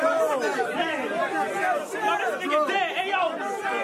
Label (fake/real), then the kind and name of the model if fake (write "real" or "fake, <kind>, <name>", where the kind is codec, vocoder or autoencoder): real